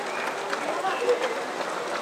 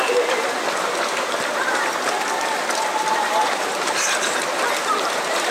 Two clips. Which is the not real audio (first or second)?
second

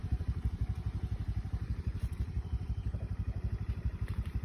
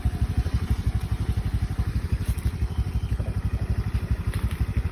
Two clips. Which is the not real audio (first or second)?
first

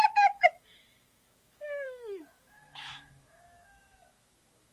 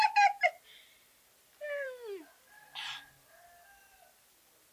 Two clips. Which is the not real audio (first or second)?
first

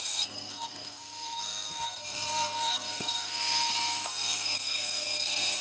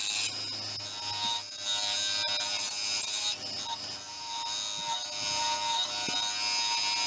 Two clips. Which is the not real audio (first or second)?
first